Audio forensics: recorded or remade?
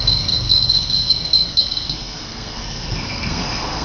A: remade